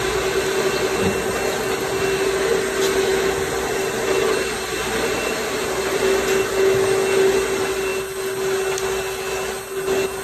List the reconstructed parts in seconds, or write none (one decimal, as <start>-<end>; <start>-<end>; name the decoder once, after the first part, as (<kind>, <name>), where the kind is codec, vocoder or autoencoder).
none